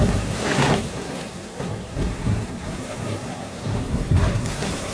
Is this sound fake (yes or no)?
yes